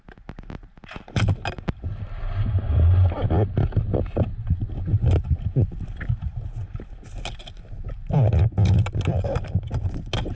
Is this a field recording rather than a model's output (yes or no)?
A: yes